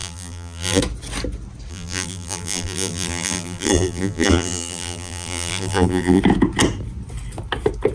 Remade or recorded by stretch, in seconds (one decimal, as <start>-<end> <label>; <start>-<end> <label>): 0.0-0.8 remade; 0.8-1.7 recorded; 1.7-6.2 remade; 6.2-7.9 recorded